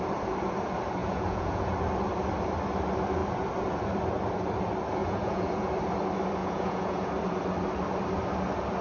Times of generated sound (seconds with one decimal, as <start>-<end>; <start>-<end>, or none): 1.0-1.7; 5.0-5.7; 6.4-7.1